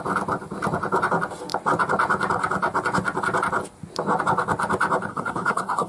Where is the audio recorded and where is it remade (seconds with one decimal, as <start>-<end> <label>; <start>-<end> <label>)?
0.0-5.1 recorded; 5.1-5.9 remade